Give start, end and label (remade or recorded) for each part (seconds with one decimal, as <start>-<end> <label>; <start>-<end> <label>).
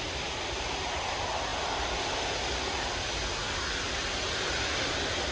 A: 0.0-5.3 recorded